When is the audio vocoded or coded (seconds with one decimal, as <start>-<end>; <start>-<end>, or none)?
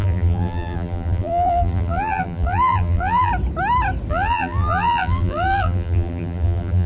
0.0-3.3; 4.1-6.9